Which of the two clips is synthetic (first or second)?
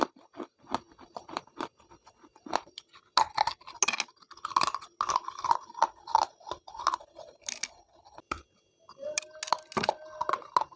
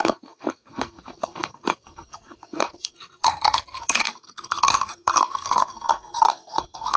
second